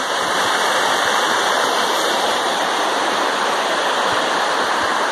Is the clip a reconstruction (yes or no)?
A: yes